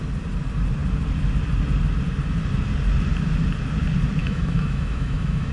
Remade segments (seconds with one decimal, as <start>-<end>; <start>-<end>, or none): 4.2-5.5